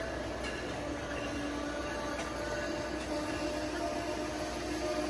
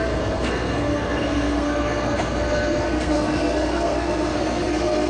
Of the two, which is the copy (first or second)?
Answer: second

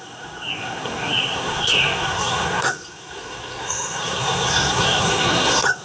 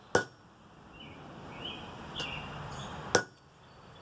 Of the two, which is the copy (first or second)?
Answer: first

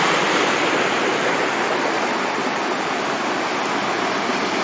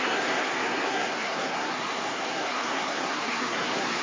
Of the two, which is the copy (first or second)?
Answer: second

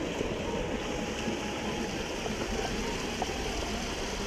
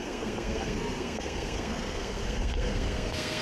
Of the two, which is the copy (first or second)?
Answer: second